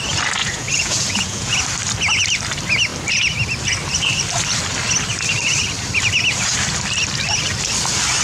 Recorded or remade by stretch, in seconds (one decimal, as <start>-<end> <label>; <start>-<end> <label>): 0.0-0.4 recorded; 0.4-1.5 remade; 1.5-8.2 recorded